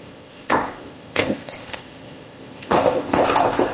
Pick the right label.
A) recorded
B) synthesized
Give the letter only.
B